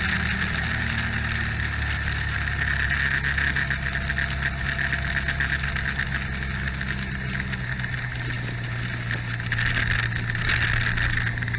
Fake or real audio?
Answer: real